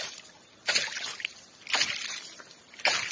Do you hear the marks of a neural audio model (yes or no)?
no